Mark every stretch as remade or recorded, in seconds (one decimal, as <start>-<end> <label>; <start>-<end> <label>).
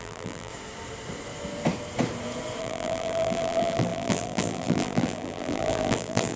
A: 0.0-0.5 remade; 0.5-2.6 recorded; 2.6-6.4 remade